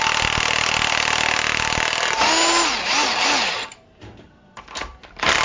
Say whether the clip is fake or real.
real